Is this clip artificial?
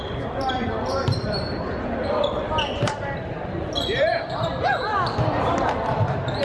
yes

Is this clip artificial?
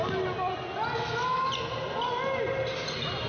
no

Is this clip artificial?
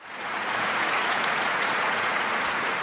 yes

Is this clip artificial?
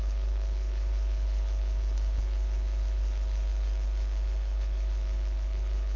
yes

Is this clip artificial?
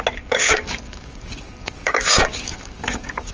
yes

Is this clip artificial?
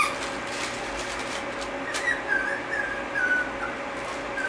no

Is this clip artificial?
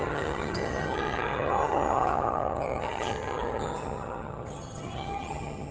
yes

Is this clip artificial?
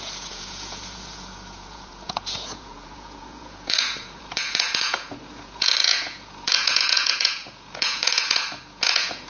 yes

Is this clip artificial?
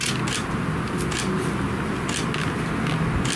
no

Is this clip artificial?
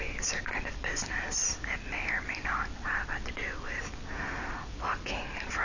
no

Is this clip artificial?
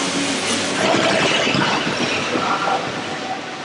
no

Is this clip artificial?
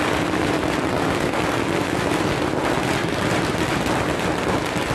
no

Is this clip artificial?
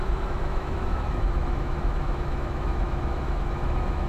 yes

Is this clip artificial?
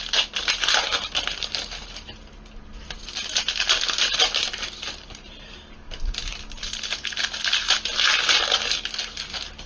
no